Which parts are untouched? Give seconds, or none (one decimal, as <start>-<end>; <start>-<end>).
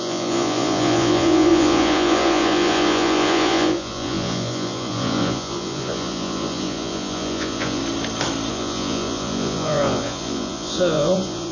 7.8-8.5